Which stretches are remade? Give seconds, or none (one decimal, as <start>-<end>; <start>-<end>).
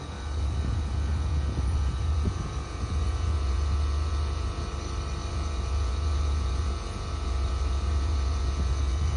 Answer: 0.0-4.7; 5.3-9.2